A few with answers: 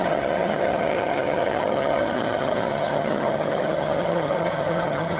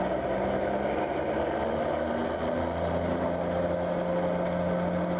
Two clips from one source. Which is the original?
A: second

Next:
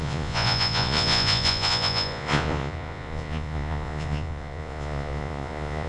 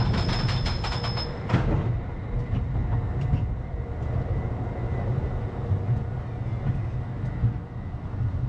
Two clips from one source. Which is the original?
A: second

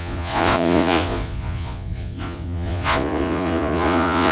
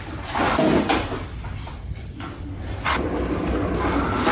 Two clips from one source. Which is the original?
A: second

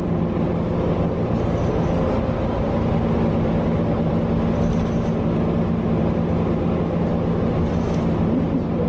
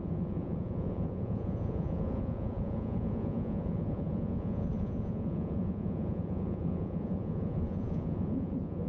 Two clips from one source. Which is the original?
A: first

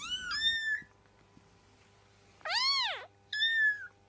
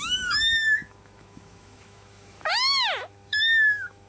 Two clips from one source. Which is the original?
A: first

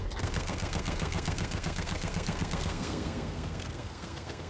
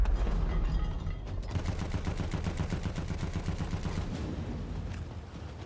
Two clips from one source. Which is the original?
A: second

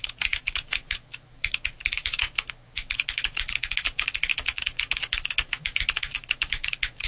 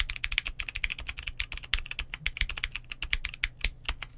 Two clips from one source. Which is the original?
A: second